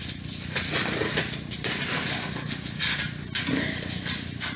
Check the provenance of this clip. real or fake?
real